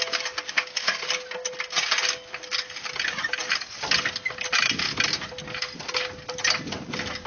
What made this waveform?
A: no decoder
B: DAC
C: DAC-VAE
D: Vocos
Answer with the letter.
A